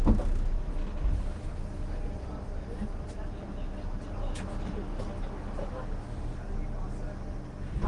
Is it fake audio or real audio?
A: real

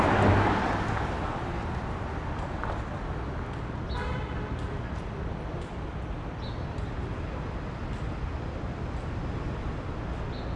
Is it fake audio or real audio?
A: real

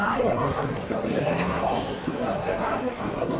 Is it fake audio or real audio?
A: fake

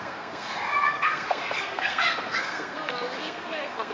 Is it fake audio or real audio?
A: fake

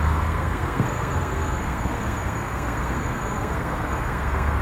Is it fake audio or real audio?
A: fake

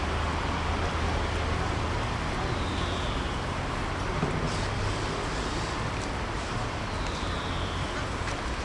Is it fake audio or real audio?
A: real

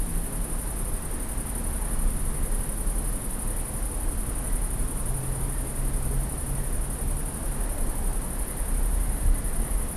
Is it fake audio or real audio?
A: real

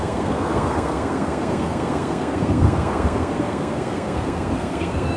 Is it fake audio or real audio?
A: fake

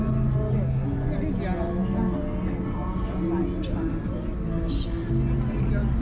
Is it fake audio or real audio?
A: real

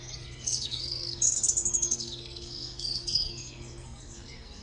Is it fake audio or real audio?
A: fake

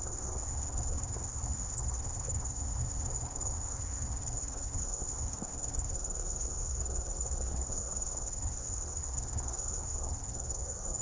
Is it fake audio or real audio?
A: fake